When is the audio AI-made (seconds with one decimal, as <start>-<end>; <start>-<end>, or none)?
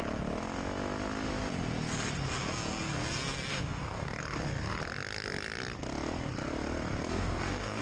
3.5-4.2; 7.1-7.8